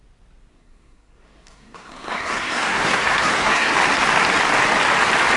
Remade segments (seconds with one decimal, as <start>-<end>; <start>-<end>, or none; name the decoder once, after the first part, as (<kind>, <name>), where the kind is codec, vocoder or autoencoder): 0.5-3.7 (codec, SNAC)